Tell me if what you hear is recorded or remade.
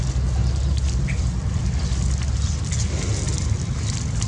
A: recorded